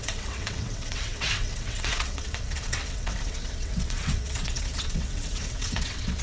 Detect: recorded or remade remade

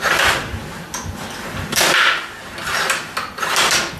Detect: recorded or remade recorded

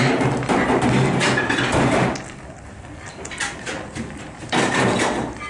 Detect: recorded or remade recorded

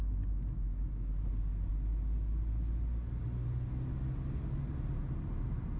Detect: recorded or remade recorded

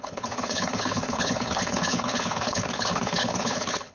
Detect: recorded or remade remade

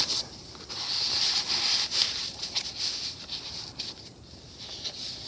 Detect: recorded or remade recorded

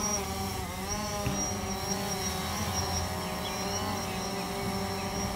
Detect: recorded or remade recorded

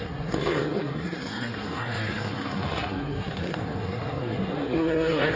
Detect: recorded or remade remade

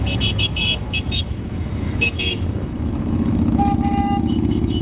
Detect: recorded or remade remade